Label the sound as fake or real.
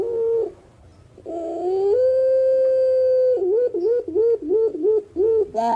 real